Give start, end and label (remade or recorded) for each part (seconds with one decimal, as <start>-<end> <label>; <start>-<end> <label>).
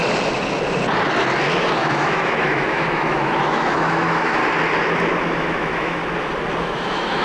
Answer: 0.0-1.8 recorded; 1.8-4.4 remade; 4.4-5.2 recorded; 5.2-6.0 remade; 6.0-6.6 recorded; 6.6-7.2 remade